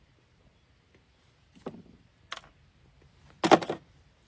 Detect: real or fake real